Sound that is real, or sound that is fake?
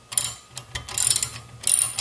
real